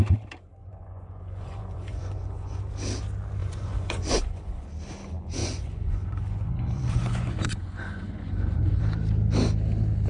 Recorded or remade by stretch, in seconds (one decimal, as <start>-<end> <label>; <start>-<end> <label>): 0.0-0.6 recorded; 0.6-2.6 remade; 2.6-3.4 recorded; 3.4-4.7 remade; 4.7-5.4 recorded; 5.4-8.8 remade; 8.8-10.1 recorded